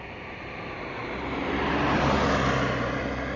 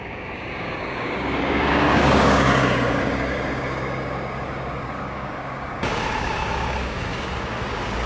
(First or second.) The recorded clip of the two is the first